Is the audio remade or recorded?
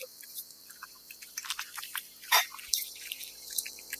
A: remade